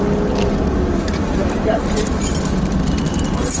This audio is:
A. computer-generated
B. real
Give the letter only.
B